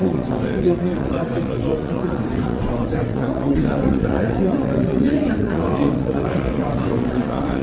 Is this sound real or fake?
fake